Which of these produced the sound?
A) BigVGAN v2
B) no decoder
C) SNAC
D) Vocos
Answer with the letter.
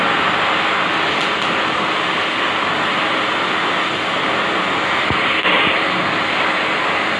B